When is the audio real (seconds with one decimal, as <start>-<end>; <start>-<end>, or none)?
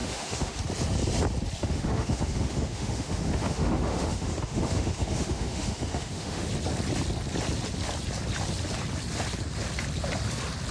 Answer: 0.6-1.6; 6.5-10.7